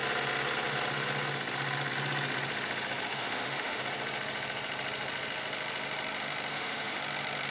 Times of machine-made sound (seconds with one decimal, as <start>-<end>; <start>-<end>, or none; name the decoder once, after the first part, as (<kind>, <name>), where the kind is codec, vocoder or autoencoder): 3.1-3.8 (autoencoder, DAC-VAE); 6.5-7.0